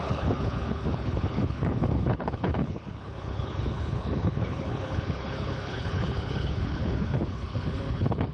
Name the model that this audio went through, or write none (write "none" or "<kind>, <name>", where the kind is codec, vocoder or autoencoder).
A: codec, HILCodec